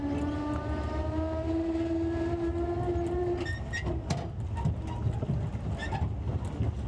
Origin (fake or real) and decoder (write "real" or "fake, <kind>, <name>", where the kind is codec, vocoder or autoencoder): real